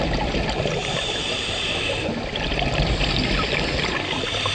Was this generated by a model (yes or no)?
no